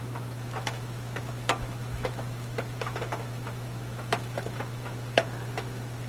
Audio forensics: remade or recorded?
remade